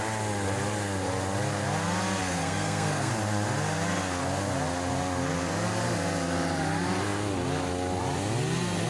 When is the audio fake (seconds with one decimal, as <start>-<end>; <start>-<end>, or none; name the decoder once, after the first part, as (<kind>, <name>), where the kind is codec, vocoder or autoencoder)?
2.2-3.1 (codec, SNAC)